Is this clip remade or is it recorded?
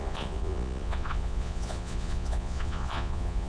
remade